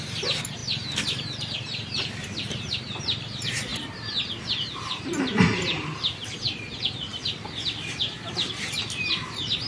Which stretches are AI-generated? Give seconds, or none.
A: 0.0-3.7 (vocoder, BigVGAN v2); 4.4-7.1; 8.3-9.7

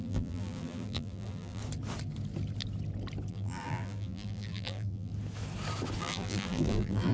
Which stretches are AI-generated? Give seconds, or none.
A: 0.0-1.6 (vocoder, BigVGAN v2); 3.3-5.1; 6.0-7.1

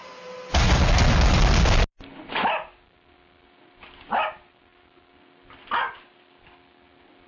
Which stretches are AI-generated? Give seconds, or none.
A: none

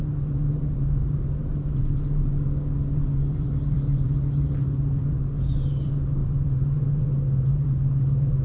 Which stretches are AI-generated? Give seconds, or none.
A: 0.0-8.4 (vocoder, BigVGAN v2)

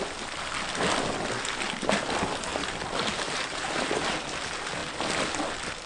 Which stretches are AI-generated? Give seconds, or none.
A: 2.5-3.9 (vocoder, BigVGAN v2)

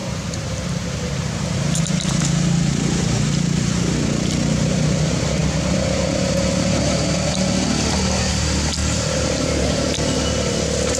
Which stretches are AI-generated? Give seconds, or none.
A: 0.0-2.2 (vocoder, BigVGAN v2); 8.8-9.7